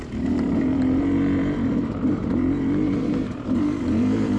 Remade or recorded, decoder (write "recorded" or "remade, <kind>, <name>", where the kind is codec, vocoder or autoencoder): remade, vocoder, BigVGAN v2